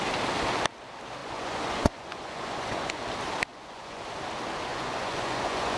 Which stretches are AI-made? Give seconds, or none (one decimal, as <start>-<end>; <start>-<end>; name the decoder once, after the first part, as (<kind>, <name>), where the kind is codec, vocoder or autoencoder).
1.2-3.0 (vocoder, Vocos); 3.5-4.0; 4.7-5.8